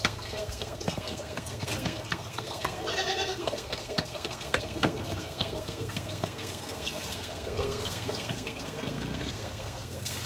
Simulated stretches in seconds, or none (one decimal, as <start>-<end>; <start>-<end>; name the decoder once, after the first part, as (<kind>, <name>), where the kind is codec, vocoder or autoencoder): 0.0-10.3 (codec, SNAC)